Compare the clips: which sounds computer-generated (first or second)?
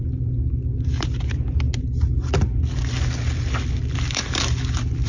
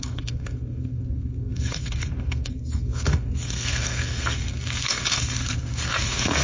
second